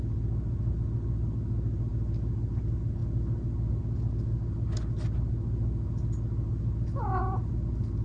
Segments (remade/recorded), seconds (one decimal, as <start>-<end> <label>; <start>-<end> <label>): 0.0-8.0 recorded